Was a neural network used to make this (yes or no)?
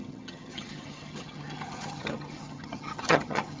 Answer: yes